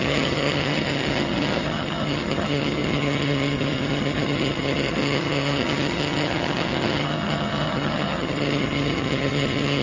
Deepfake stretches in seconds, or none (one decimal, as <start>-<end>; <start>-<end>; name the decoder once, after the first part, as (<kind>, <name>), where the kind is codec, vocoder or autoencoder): 0.0-9.8 (vocoder, HiFi-GAN)